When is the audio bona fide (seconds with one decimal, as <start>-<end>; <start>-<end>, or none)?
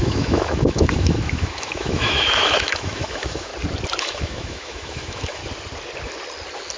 3.5-4.0; 5.4-6.8